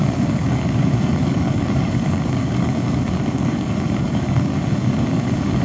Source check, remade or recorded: remade